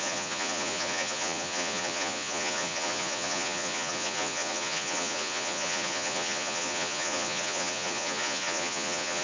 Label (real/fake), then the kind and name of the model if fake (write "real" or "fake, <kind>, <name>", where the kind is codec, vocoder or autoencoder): fake, vocoder, Vocos